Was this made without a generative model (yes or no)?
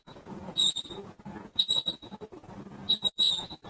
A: no